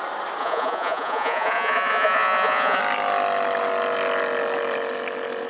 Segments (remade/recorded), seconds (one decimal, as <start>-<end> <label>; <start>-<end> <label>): 0.0-0.4 recorded; 0.4-2.8 remade; 2.8-5.5 recorded